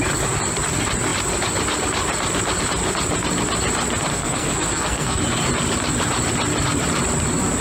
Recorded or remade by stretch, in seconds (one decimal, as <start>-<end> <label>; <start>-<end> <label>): 0.0-4.1 recorded; 4.1-5.2 remade; 5.2-7.6 recorded